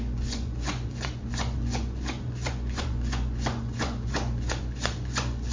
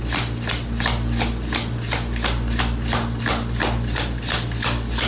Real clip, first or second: second